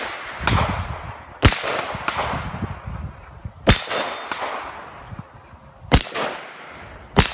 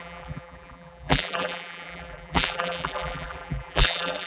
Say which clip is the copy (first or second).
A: second